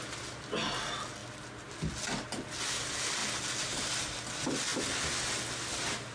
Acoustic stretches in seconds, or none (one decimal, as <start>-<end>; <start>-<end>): 0.0-6.1